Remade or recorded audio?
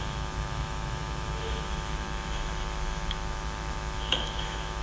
remade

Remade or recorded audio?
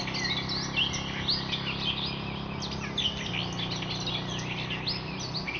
recorded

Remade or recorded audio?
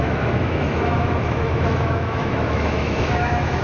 remade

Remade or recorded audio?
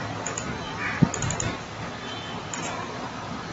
recorded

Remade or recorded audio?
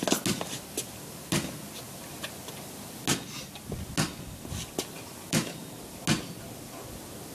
recorded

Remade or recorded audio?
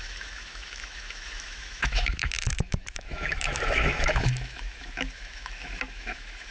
remade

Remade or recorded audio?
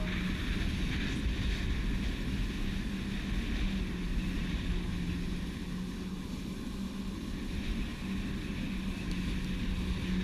recorded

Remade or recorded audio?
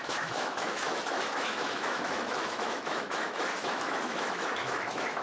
remade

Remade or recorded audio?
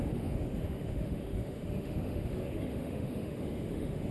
remade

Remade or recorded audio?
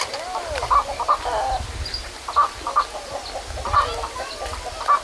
recorded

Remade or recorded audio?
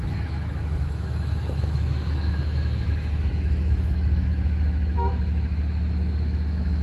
remade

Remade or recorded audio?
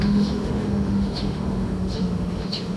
remade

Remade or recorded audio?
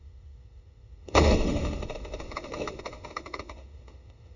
remade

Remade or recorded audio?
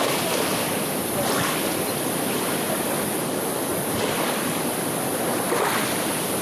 recorded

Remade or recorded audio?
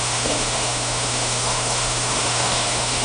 remade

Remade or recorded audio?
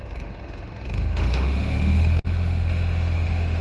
remade